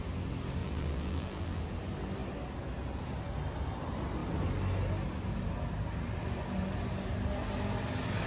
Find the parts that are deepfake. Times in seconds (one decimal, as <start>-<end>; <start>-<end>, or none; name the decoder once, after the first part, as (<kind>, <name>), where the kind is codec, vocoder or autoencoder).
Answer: 0.6-1.6 (vocoder, BigVGAN v2)